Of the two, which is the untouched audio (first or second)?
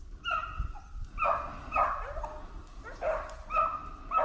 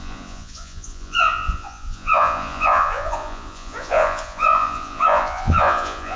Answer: first